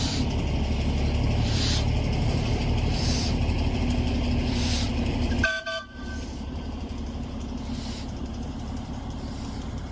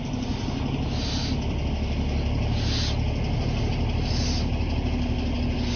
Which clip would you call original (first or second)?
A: second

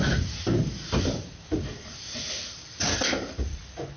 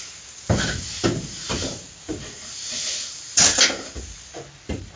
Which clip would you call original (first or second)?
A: second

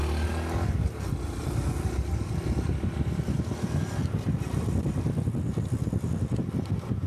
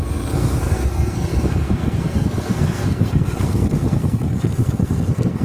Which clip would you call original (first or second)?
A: first